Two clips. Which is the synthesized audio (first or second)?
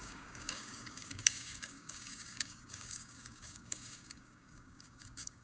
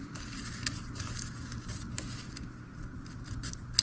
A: first